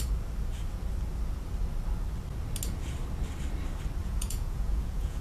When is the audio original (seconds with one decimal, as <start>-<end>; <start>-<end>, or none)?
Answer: 0.0-4.0